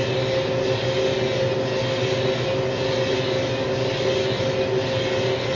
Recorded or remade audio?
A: recorded